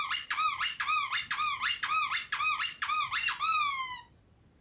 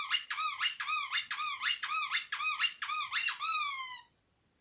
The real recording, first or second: first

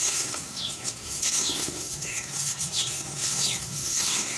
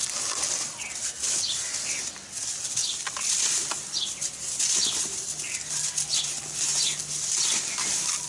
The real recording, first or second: second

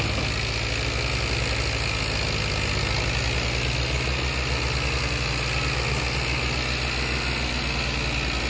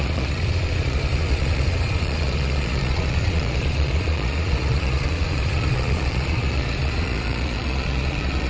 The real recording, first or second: first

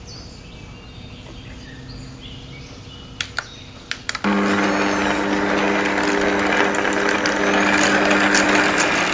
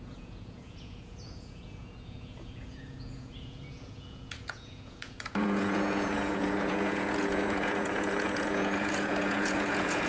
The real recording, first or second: first